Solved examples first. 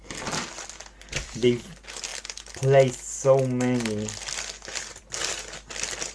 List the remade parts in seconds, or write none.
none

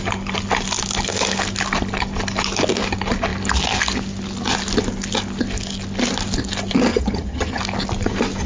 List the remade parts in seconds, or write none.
6.9-7.6 (vocoder, HiFi-GAN)

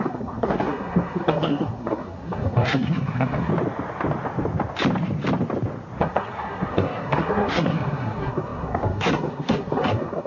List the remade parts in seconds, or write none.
0.0-3.5 (codec, SNAC); 6.0-10.3

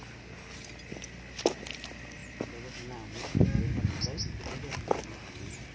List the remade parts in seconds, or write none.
none

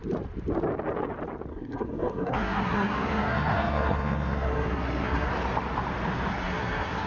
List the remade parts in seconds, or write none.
1.5-5.3 (codec, SNAC); 6.3-7.1

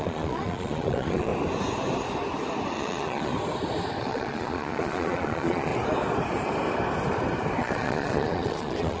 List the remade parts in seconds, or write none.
0.0-1.3 (vocoder, Vocos); 2.7-3.3; 4.0-5.7; 7.6-9.0

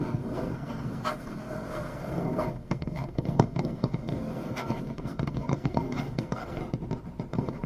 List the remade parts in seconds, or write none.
0.0-6.6 (codec, SNAC); 7.3-7.7